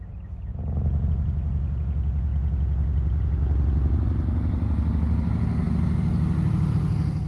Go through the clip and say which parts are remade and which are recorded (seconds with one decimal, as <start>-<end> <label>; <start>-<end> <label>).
0.0-7.3 recorded